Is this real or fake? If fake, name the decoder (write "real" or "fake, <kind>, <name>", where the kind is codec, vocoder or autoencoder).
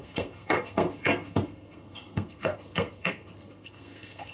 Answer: fake, codec, SNAC